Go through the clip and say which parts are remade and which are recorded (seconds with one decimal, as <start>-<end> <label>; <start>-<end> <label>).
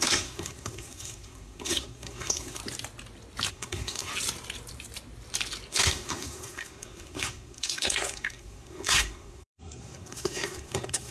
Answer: 0.0-2.6 remade; 2.6-3.5 recorded; 3.5-4.1 remade; 4.1-5.7 recorded; 5.7-11.1 remade